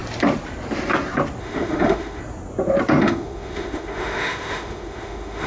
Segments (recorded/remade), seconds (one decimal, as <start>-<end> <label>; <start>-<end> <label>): 0.0-1.4 recorded; 1.4-2.2 remade; 2.2-3.0 recorded; 3.0-5.5 remade